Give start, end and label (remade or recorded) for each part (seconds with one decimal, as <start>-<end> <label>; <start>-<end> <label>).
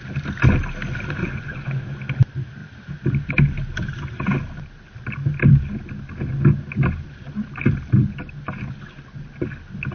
0.0-1.2 recorded; 1.2-1.8 remade; 1.8-9.9 recorded